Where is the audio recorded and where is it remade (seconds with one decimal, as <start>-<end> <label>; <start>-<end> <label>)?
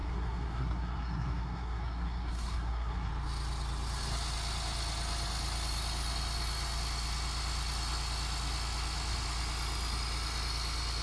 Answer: 0.0-3.1 remade; 3.1-11.0 recorded